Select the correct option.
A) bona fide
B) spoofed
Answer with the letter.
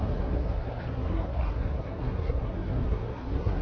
B